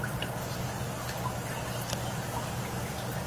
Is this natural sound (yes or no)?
yes